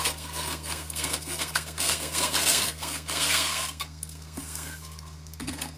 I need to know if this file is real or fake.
fake